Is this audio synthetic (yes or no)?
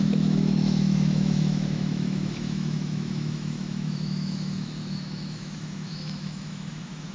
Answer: yes